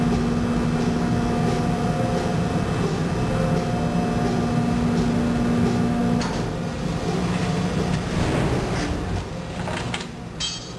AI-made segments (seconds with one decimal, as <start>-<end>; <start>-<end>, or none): none

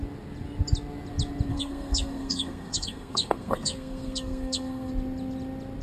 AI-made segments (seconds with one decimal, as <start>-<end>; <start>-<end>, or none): 1.5-4.9